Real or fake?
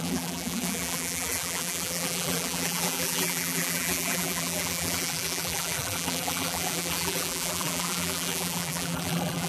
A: fake